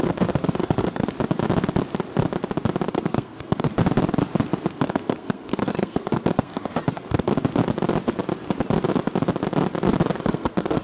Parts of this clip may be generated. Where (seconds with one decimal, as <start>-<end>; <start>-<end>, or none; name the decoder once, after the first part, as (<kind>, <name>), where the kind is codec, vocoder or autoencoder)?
0.0-1.0 (codec, SNAC); 2.9-3.7; 4.7-7.3; 10.2-10.8